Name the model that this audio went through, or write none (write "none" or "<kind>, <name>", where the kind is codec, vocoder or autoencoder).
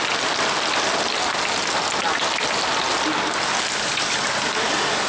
none